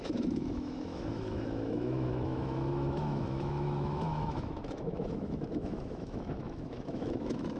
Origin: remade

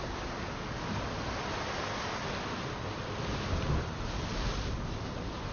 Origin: recorded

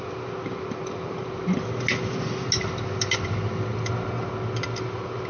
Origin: recorded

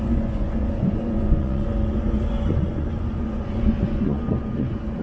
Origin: remade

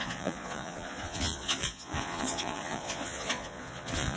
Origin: remade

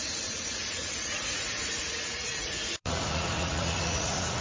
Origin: remade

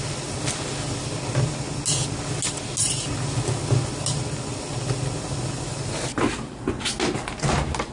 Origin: recorded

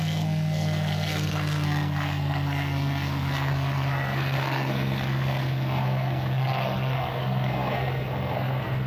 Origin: remade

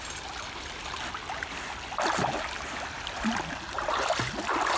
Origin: recorded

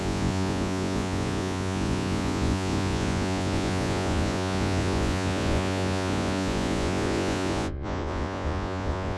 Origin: remade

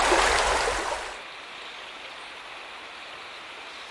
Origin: recorded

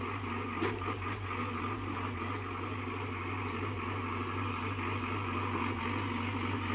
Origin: recorded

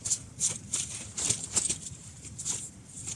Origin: remade